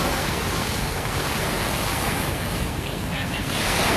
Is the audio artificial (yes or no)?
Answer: yes